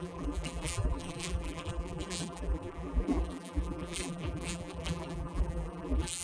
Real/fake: fake